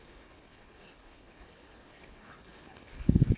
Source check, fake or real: fake